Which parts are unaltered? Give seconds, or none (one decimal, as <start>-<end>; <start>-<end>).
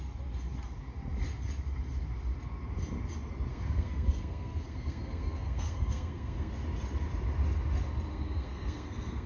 0.0-3.5; 6.5-8.1